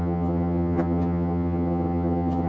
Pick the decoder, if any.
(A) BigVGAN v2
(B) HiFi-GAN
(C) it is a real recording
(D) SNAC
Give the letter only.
B